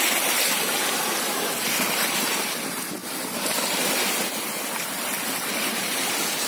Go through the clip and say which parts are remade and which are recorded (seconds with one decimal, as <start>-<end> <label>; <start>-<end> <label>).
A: 0.0-6.5 recorded